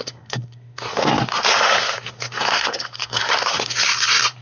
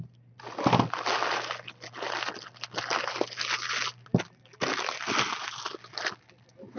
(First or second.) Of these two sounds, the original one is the second